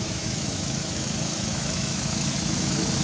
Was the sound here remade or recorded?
remade